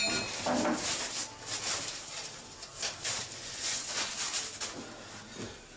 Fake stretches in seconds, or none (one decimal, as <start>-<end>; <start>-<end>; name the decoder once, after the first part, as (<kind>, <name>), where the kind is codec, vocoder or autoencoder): 3.2-4.1 (vocoder, Vocos)